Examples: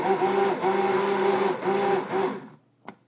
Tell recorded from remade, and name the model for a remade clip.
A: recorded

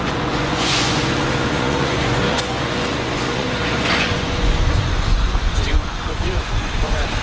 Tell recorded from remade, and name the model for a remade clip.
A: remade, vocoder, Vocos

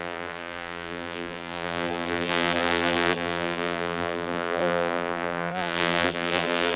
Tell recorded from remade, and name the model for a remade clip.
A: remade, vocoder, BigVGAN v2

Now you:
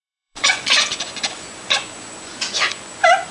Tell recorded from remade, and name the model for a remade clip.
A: remade, vocoder, Vocos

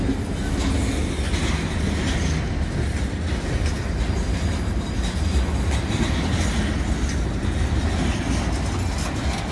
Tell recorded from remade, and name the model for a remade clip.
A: recorded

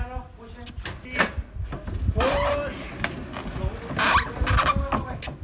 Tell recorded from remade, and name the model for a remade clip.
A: recorded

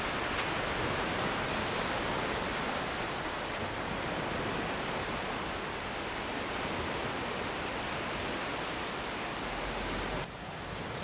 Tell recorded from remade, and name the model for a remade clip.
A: recorded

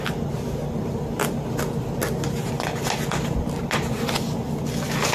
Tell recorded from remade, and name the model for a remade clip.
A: recorded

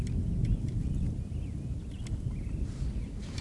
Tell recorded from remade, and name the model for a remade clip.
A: recorded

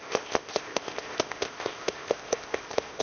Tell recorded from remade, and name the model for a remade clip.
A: remade, codec, ZipCodec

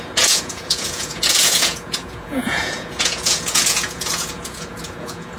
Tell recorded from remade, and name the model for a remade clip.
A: remade, vocoder, Vocos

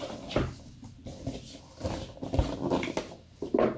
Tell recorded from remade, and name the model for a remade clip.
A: recorded